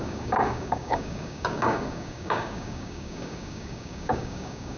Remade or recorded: remade